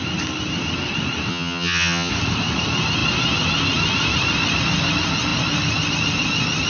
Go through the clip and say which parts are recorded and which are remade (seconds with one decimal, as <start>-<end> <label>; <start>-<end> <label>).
0.0-1.3 recorded; 1.3-2.1 remade; 2.1-6.7 recorded